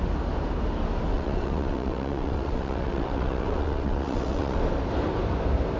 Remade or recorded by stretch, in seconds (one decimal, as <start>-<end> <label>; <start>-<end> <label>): 0.0-1.1 recorded; 1.1-4.6 remade; 4.6-5.8 recorded